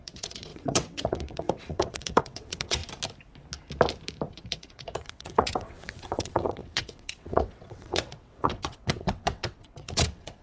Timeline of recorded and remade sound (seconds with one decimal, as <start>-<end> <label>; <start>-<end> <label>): 0.0-2.8 remade; 2.8-4.3 recorded; 4.3-10.4 remade